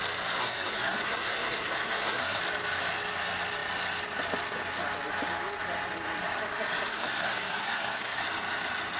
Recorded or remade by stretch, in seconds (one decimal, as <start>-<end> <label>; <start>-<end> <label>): 0.0-0.4 recorded; 0.4-2.4 remade; 2.4-6.9 recorded; 6.9-8.2 remade; 8.2-9.0 recorded